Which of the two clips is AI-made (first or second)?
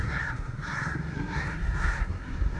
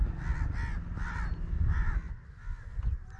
first